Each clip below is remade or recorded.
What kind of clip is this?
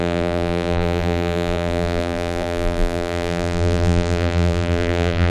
remade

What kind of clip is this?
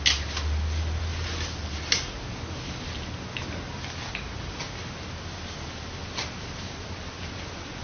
recorded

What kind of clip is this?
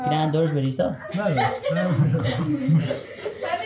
recorded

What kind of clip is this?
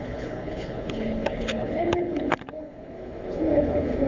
remade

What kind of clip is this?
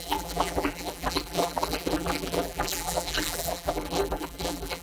remade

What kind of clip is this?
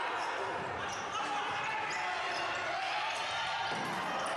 recorded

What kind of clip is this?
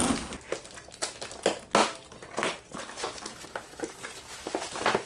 recorded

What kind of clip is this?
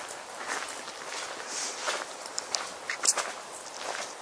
recorded